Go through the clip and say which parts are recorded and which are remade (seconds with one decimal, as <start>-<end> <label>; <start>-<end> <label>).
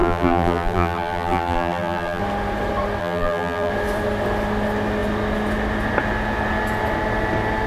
0.0-2.2 remade; 2.2-3.0 recorded; 3.0-3.7 remade; 3.7-7.7 recorded